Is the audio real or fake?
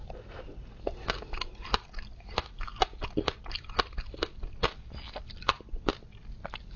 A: real